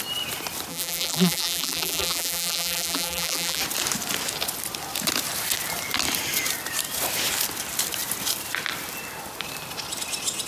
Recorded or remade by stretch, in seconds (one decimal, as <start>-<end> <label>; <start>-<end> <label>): 0.0-0.7 recorded; 0.7-3.6 remade; 3.6-10.5 recorded